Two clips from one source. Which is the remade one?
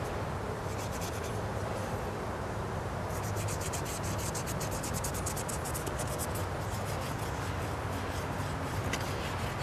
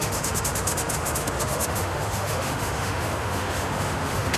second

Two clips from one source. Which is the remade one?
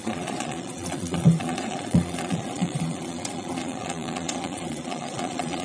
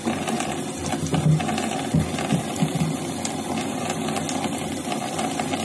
first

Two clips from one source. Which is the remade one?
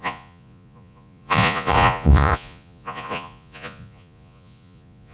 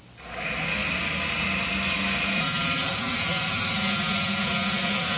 first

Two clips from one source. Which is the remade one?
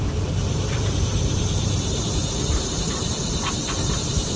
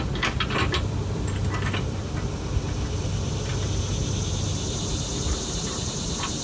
first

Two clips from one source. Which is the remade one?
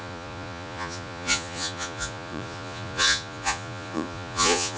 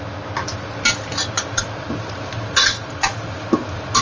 first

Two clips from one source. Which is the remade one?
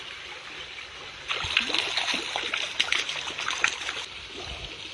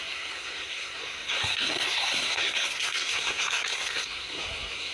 second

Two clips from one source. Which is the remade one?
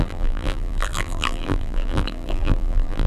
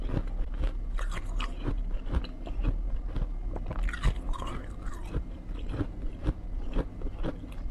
first